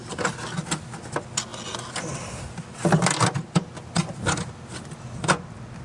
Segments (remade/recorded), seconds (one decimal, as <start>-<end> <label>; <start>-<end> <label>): 0.0-5.8 recorded